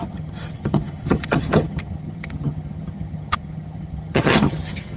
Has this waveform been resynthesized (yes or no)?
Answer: yes